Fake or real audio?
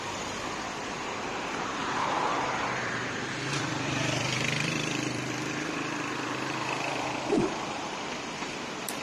fake